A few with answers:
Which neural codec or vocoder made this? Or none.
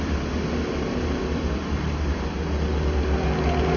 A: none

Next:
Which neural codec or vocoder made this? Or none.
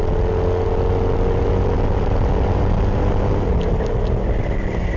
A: none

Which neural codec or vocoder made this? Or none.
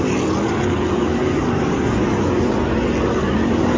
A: none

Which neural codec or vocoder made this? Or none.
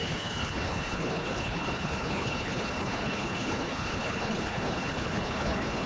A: codec, HILCodec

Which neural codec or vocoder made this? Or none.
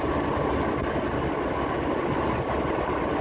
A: none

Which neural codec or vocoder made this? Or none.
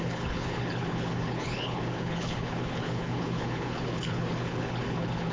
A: codec, HILCodec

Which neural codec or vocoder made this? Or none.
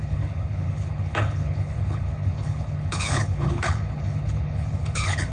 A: codec, HILCodec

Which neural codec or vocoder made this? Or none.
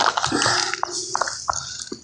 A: none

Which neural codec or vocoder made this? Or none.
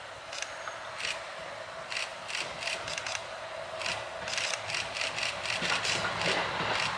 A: none